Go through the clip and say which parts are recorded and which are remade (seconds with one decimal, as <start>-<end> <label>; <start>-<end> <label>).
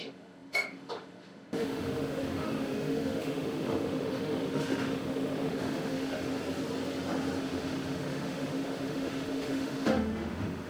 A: 0.0-6.3 remade; 6.3-7.4 recorded; 7.4-10.7 remade